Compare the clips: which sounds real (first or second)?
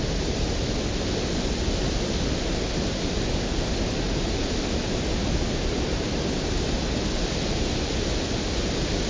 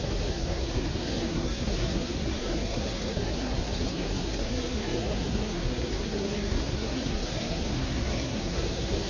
first